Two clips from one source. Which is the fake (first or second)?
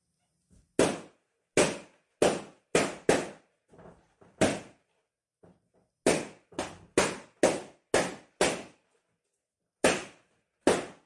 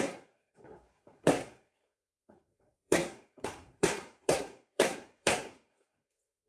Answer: second